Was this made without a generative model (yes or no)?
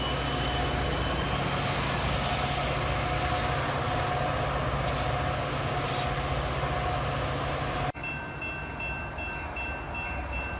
yes